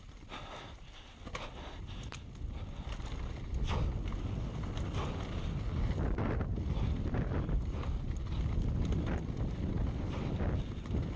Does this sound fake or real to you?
real